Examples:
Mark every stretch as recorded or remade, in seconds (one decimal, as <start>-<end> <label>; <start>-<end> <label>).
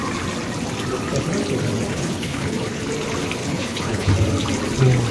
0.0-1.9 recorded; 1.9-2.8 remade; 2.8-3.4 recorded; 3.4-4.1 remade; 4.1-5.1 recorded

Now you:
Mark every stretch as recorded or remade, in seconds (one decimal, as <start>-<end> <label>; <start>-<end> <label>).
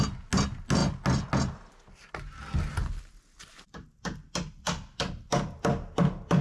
0.0-6.4 recorded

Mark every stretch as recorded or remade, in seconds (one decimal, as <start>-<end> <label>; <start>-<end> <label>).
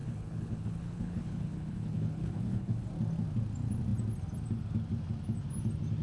0.0-2.9 remade; 2.9-6.0 recorded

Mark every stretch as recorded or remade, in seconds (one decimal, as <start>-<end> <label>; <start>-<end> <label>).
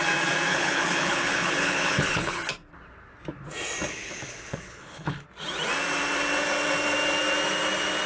0.0-0.5 recorded; 0.5-2.5 remade; 2.5-3.9 recorded; 3.9-5.2 remade; 5.2-8.1 recorded